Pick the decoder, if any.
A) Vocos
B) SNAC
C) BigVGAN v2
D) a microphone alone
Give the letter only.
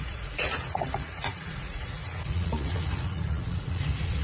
A